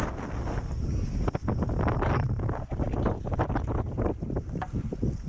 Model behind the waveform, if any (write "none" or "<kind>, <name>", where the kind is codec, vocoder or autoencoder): none